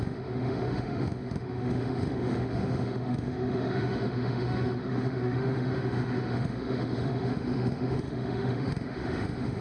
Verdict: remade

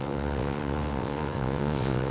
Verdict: remade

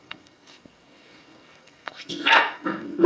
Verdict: remade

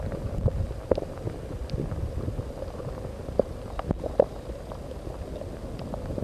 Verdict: recorded